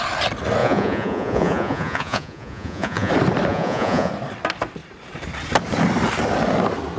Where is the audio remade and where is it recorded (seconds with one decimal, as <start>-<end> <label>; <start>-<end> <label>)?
0.0-0.6 recorded; 0.6-3.1 remade; 3.1-3.5 recorded; 3.5-4.1 remade; 4.1-7.0 recorded